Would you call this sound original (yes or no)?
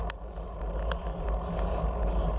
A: yes